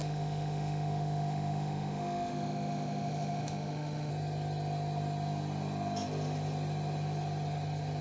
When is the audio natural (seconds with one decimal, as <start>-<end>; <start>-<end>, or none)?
4.1-8.0